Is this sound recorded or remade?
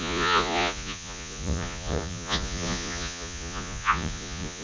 remade